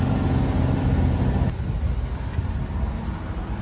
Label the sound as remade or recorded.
recorded